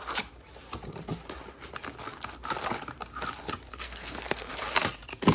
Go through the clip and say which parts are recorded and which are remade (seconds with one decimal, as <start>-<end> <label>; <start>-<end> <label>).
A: 0.0-3.7 recorded; 3.7-4.5 remade; 4.5-5.3 recorded